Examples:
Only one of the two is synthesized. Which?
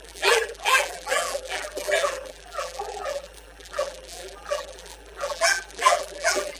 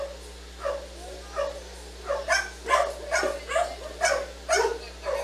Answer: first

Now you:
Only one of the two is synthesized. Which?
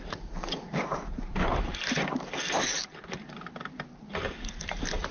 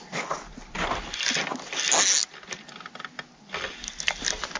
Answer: first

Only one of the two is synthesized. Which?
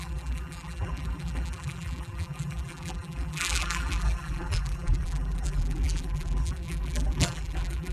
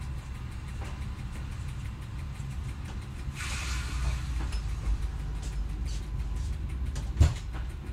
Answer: first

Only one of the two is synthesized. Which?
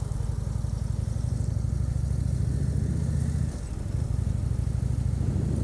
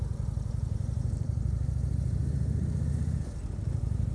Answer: second